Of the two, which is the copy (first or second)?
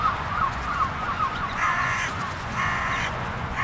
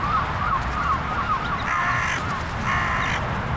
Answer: first